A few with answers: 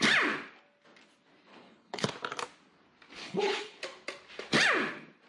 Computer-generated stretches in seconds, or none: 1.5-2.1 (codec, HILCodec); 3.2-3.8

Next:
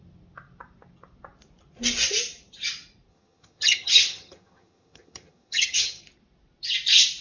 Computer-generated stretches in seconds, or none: 3.1-6.0 (vocoder, HiFi-GAN)

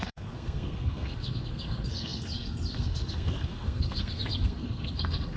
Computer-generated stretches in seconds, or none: 0.0-5.4 (codec, SNAC)